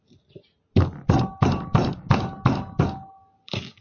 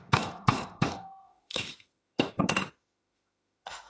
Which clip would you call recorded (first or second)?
first